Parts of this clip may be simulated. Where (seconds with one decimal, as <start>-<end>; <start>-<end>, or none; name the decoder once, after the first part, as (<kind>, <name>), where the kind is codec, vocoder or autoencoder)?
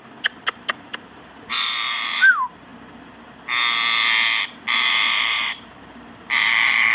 0.0-2.7 (vocoder, BigVGAN v2); 4.4-6.9